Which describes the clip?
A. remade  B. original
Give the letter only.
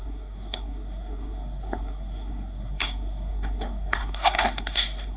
A